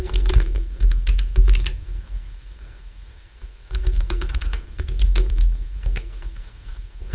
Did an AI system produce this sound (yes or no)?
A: yes